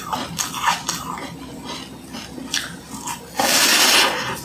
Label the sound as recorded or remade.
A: recorded